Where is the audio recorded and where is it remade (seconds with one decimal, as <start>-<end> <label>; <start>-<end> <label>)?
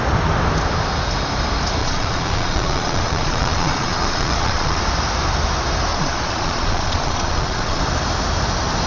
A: 0.0-1.8 recorded; 1.8-4.8 remade; 4.8-5.9 recorded; 5.9-7.8 remade; 7.8-8.9 recorded